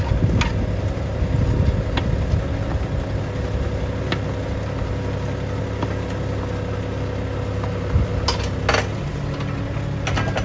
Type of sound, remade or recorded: recorded